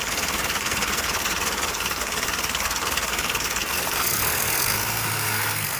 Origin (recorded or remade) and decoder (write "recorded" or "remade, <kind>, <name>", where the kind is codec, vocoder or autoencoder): remade, codec, SNAC